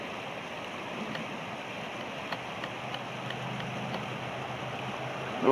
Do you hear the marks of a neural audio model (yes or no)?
no